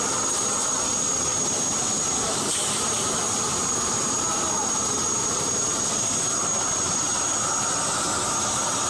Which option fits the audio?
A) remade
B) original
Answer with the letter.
B